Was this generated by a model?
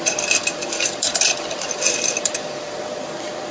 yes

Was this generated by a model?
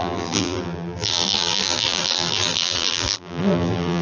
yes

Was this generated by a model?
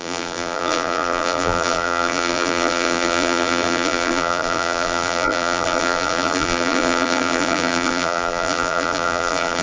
yes